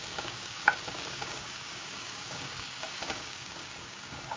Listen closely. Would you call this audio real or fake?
fake